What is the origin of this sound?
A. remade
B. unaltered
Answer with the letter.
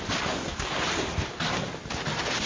B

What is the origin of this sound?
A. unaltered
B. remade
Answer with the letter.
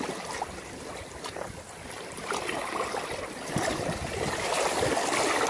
A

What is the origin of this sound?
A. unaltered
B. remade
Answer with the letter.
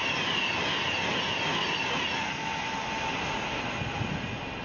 A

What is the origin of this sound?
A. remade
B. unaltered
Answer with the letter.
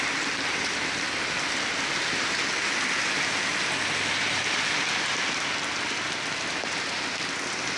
B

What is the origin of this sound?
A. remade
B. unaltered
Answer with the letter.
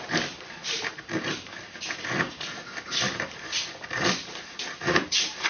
A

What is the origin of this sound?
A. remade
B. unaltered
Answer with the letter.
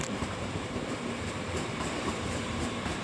A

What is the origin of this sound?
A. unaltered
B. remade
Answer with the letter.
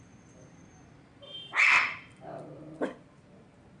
B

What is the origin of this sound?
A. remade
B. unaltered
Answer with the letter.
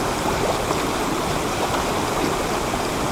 B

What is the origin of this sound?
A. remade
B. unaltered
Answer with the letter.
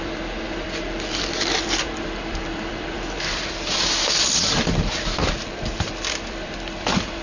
A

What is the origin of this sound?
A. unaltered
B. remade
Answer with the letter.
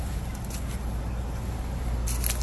A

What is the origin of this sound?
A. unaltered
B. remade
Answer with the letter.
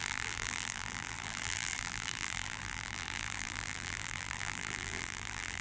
B